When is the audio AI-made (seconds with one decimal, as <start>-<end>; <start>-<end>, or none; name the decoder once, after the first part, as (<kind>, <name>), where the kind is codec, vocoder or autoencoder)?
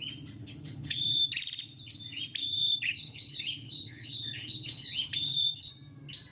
0.4-1.2 (codec, HILCodec); 2.4-5.7